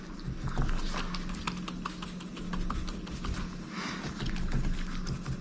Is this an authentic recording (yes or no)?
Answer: yes